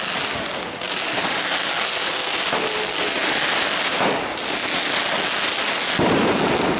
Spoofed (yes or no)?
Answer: no